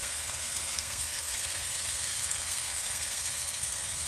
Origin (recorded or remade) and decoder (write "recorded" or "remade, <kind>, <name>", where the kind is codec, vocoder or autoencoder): remade, codec, SNAC